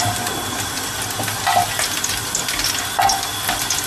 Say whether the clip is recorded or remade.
recorded